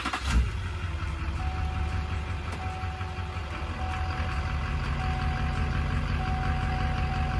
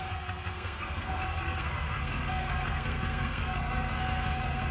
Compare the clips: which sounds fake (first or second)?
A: second